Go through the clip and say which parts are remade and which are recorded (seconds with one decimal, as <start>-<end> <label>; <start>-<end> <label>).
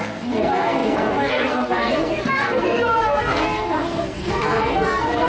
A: 0.0-5.3 remade